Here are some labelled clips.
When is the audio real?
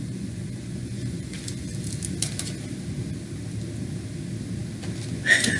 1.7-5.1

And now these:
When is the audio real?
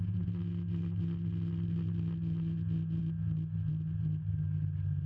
0.0-5.1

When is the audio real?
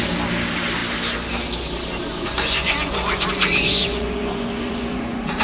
0.0-2.1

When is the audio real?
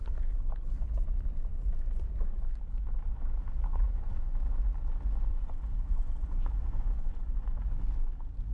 0.0-3.7; 4.4-5.3; 7.6-8.5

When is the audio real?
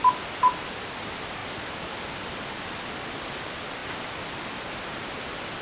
0.0-5.6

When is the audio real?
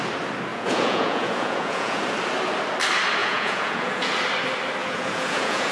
0.0-0.5; 2.0-3.2; 4.1-4.8